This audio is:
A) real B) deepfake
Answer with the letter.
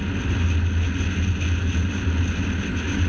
A